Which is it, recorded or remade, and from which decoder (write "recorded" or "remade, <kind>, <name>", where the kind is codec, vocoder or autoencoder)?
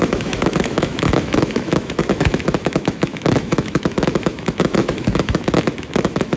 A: remade, autoencoder, DAC-VAE